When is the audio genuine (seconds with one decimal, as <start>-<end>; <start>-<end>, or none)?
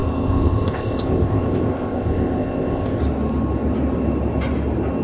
3.0-5.0